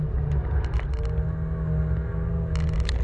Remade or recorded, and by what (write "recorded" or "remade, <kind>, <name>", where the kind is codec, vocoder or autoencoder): recorded